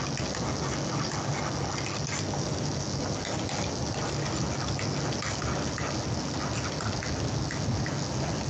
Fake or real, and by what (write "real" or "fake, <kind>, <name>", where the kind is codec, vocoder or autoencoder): real